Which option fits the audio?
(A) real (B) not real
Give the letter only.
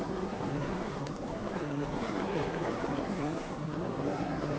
B